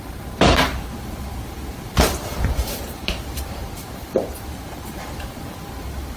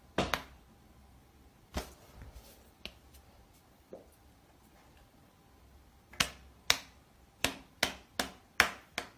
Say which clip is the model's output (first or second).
first